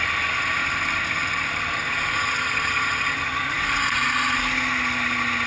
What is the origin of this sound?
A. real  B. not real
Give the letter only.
A